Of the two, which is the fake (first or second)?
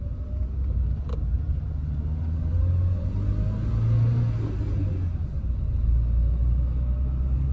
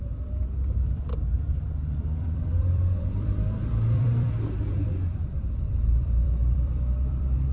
second